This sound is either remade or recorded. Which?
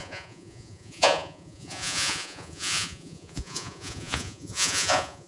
remade